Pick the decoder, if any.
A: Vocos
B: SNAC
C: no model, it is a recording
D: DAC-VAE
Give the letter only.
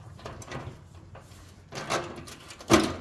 C